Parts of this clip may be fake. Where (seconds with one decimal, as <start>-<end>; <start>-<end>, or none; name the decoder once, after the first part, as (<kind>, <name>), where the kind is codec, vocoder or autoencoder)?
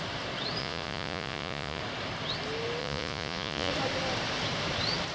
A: 0.6-1.8 (vocoder, Vocos); 2.8-3.7